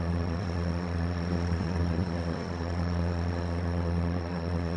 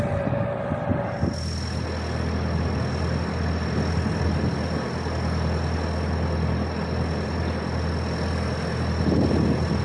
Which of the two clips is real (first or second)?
second